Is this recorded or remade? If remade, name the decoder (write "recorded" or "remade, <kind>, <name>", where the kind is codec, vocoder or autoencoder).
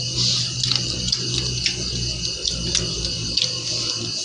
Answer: recorded